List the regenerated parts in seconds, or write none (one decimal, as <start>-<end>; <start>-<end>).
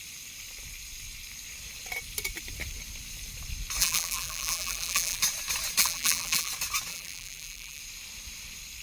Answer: 3.8-5.2; 5.8-6.5; 6.9-7.8